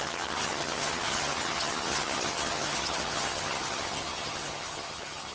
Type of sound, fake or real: fake